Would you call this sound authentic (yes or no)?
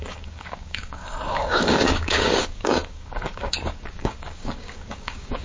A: no